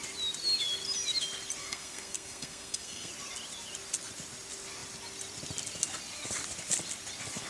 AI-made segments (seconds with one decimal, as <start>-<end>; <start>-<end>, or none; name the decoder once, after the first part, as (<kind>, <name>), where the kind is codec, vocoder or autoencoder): 1.6-3.1 (codec, SNAC)